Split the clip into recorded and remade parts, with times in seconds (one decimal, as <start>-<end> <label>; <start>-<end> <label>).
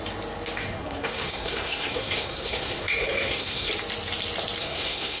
0.0-0.6 recorded; 0.6-3.7 remade; 3.7-4.6 recorded; 4.6-5.2 remade